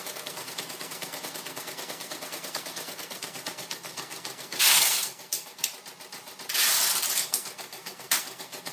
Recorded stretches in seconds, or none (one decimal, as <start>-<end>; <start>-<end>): 5.7-7.2